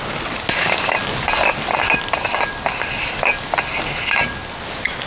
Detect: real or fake real